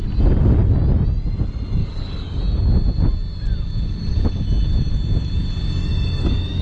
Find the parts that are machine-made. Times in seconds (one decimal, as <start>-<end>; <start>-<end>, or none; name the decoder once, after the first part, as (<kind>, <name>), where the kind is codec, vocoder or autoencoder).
1.8-2.4 (codec, DAC); 5.8-6.6